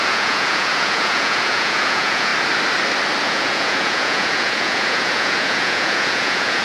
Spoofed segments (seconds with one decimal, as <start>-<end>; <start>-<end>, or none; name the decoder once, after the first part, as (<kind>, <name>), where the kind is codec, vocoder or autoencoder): 0.0-2.3 (vocoder, Vocos); 3.2-6.6

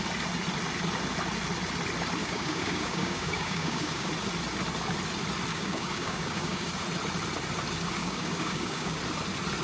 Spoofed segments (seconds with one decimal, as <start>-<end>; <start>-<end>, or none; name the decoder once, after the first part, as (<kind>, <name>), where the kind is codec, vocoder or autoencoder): 2.2-4.1 (codec, DAC); 5.5-6.7; 8.0-9.0

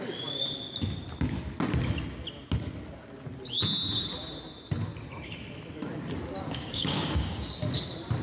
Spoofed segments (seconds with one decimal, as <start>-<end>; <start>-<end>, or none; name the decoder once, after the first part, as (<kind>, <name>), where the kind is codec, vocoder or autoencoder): 6.4-7.5 (codec, DAC)